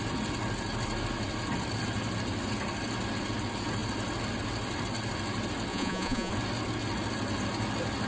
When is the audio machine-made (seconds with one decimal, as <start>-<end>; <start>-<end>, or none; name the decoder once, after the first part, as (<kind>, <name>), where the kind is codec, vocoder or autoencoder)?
5.7-6.3 (vocoder, Vocos)